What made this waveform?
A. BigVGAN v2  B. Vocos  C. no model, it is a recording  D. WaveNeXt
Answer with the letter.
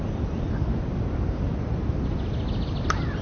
C